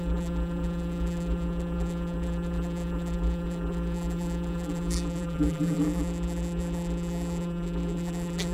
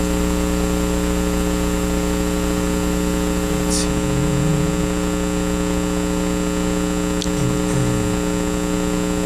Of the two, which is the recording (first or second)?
second